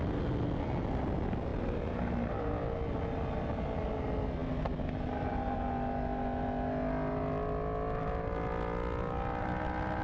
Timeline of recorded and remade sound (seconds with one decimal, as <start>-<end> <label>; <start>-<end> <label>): 0.0-10.0 recorded